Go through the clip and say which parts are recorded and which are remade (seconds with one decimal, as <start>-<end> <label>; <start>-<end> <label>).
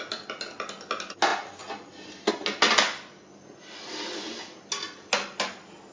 0.0-5.9 recorded